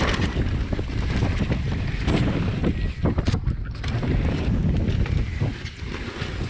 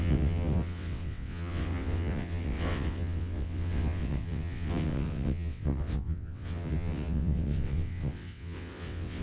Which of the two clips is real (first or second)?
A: first